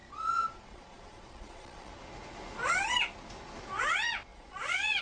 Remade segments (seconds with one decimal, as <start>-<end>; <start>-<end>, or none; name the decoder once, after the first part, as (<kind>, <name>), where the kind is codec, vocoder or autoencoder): 0.0-1.9 (vocoder, Vocos); 4.3-5.0